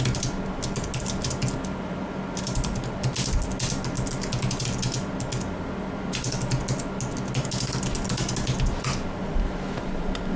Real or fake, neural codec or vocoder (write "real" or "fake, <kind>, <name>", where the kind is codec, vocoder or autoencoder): real